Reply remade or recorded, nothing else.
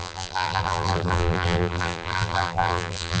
remade